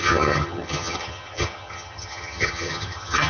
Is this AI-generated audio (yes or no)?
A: yes